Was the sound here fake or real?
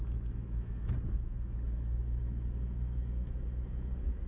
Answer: fake